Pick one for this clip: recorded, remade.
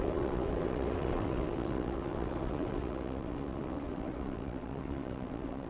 remade